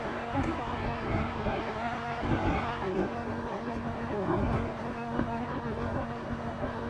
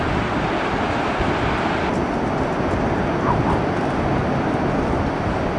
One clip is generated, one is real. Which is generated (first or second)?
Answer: first